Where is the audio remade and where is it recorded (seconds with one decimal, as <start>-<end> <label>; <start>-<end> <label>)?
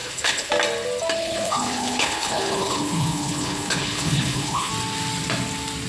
0.0-0.5 remade; 0.5-1.2 recorded; 1.2-4.7 remade; 4.7-5.9 recorded